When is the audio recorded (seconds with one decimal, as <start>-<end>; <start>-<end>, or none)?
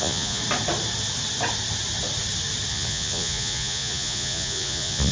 0.4-2.7